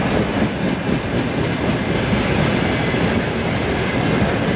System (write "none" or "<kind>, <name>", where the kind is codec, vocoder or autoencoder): none